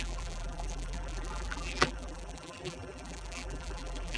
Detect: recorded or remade remade